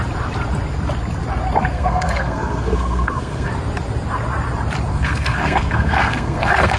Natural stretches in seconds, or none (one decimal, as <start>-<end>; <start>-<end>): 0.0-1.7; 3.5-4.9